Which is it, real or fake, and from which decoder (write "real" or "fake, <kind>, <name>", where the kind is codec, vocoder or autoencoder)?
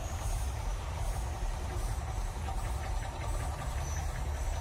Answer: fake, vocoder, BigVGAN v2